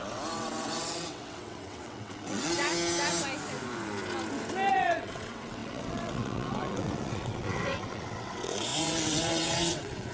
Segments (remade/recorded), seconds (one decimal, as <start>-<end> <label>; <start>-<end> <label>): 0.0-2.7 remade; 2.7-4.7 recorded; 4.7-10.1 remade

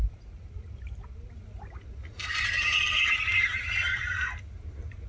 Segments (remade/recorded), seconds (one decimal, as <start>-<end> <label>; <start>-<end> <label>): 0.0-1.3 remade; 1.3-2.2 recorded; 2.2-4.0 remade; 4.0-5.1 recorded

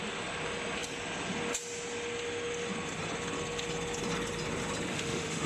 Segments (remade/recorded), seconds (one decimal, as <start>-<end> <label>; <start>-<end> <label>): 0.0-4.9 recorded; 4.9-5.5 remade

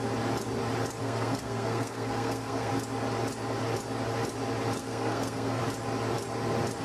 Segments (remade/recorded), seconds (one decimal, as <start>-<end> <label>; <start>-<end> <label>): 0.0-1.0 recorded; 1.0-2.7 remade; 2.7-4.8 recorded; 4.8-5.6 remade; 5.6-6.8 recorded

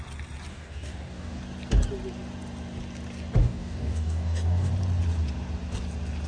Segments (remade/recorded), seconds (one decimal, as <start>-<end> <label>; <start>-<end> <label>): 0.0-0.5 recorded; 0.5-1.4 remade; 1.4-3.4 recorded; 3.4-4.7 remade; 4.7-6.3 recorded

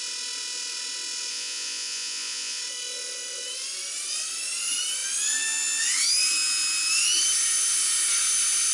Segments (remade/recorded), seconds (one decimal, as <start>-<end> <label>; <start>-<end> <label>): 0.0-1.3 recorded; 1.3-2.6 remade; 2.6-8.7 recorded